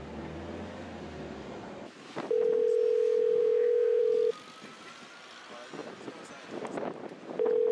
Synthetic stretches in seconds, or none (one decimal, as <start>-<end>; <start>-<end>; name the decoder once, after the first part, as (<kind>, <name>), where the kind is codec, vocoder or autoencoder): 3.4-4.0 (codec, SNAC)

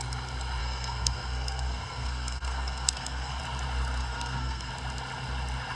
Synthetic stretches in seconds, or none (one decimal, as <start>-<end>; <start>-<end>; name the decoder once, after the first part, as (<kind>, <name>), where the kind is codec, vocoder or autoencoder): 0.6-3.4 (codec, SNAC); 4.0-4.7

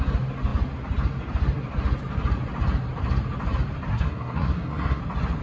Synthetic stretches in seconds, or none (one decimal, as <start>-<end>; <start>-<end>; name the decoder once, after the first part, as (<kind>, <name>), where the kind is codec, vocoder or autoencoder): 3.9-5.0 (codec, SNAC)